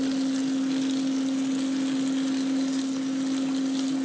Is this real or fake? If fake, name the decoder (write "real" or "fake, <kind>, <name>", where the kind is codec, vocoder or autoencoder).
real